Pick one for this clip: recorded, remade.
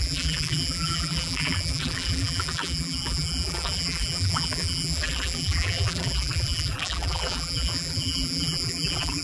remade